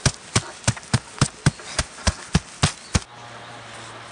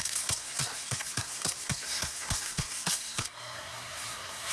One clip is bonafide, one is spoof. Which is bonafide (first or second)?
first